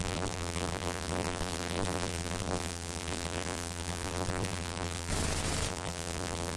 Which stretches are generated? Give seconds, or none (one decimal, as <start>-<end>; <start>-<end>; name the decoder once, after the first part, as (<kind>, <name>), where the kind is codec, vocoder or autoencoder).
0.0-5.1 (vocoder, BigVGAN v2); 5.7-6.6